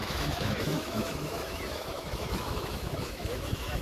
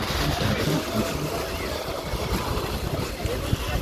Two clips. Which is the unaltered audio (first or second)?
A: second